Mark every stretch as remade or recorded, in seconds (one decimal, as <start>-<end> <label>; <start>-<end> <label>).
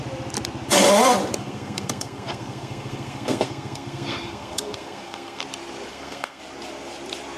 0.0-1.4 recorded; 1.4-5.4 remade; 5.4-5.9 recorded; 5.9-6.4 remade; 6.4-7.4 recorded